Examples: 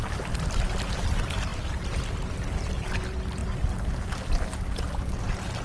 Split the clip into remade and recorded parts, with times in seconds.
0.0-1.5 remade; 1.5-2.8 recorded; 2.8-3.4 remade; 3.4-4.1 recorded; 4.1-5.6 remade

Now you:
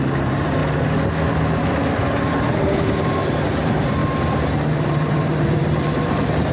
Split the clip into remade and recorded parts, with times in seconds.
0.0-0.6 remade; 0.6-2.2 recorded; 2.2-4.0 remade; 4.0-4.7 recorded; 4.7-6.5 remade

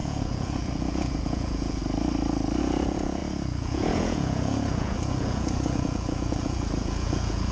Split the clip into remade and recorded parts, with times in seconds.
0.0-1.8 remade; 1.8-2.6 recorded; 2.6-7.5 remade

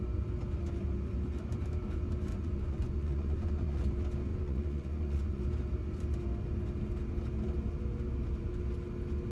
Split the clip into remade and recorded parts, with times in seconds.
0.0-2.3 recorded; 2.3-3.8 remade; 3.8-4.3 recorded; 4.3-5.4 remade; 5.4-9.3 recorded

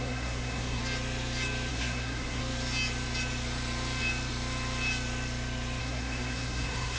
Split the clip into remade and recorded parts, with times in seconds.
0.0-0.8 remade; 0.8-1.7 recorded; 1.7-2.4 remade; 2.4-5.8 recorded; 5.8-7.0 remade

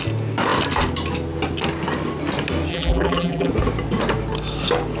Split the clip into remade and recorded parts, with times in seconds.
0.0-2.7 recorded; 2.7-3.5 remade; 3.5-5.0 recorded